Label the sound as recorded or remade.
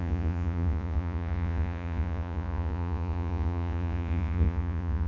remade